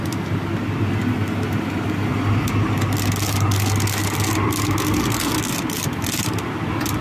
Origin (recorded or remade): recorded